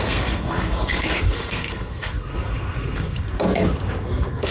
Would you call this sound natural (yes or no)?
no